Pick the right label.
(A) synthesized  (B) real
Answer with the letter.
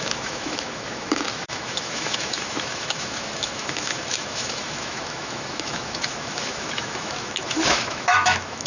A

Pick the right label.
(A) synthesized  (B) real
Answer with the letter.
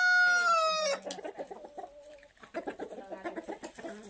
B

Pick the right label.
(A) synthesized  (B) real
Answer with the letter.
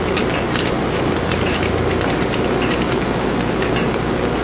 B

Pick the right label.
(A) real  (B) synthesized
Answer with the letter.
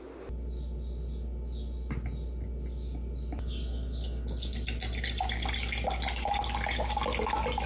A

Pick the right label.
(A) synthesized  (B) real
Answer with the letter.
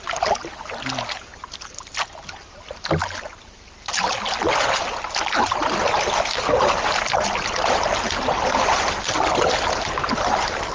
B